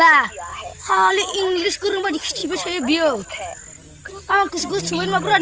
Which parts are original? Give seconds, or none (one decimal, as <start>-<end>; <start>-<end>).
0.0-0.5; 1.1-5.4